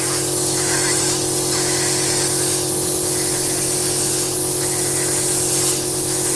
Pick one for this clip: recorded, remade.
recorded